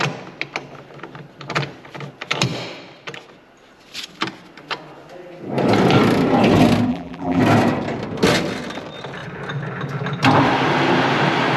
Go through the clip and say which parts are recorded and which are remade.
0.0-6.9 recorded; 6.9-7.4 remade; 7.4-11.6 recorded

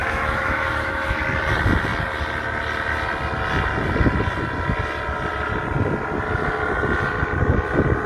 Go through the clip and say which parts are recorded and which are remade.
0.0-1.2 remade; 1.2-8.1 recorded